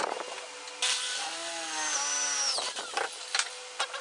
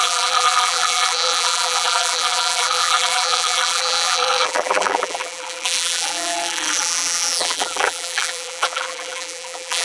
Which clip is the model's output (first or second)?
second